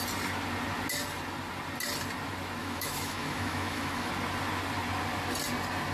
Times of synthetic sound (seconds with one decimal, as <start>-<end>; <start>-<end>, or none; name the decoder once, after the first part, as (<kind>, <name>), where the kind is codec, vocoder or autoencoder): 2.6-4.1 (autoencoder, DAC-VAE)